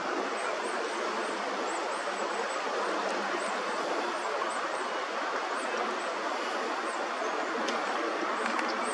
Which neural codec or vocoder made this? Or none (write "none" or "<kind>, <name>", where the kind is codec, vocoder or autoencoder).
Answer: none